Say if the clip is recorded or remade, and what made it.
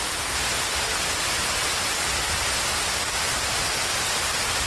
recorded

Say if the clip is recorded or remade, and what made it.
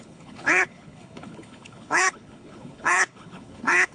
remade, codec, HILCodec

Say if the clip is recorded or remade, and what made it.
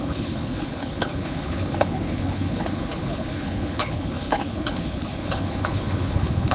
remade, codec, HILCodec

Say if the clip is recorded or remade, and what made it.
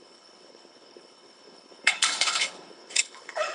remade, codec, HILCodec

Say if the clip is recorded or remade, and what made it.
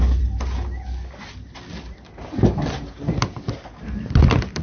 recorded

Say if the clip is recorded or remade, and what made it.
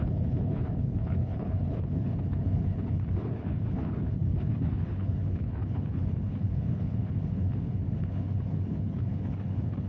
remade, codec, HILCodec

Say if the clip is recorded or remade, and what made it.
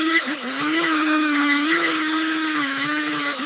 remade, codec, HILCodec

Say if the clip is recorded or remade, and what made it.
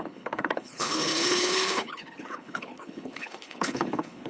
remade, codec, HILCodec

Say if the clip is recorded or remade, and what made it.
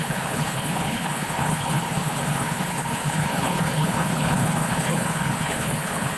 remade, codec, HILCodec